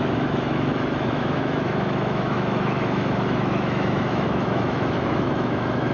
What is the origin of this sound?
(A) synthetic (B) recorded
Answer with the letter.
A